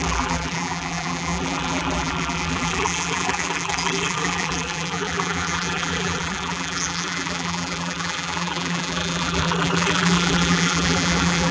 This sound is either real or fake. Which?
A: fake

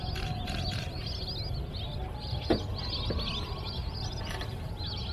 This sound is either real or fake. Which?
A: real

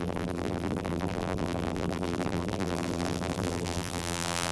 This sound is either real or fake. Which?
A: fake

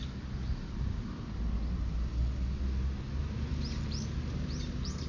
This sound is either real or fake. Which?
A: real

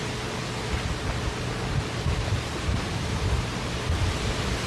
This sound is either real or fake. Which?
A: fake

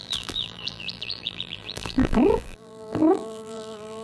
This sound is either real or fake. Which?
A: fake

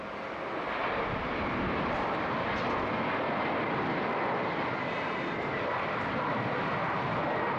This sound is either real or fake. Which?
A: real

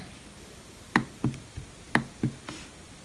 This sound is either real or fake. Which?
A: real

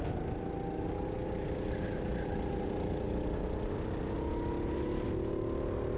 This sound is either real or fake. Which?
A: real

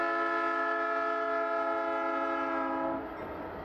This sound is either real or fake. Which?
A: real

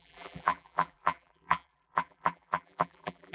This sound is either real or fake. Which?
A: fake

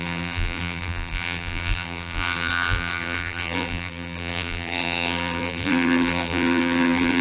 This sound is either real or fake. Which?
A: fake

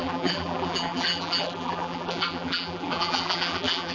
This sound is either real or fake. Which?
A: fake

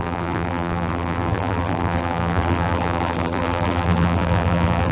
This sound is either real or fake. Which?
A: fake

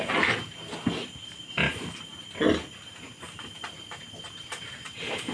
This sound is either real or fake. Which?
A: real